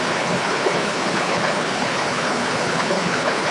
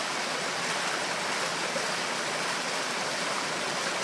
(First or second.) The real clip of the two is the second